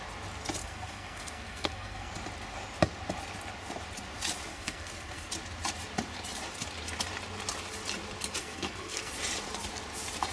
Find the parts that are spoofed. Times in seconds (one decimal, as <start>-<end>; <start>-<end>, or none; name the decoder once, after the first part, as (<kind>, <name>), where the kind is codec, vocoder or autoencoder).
0.6-2.1 (codec, SNAC); 4.5-5.3; 8.4-9.1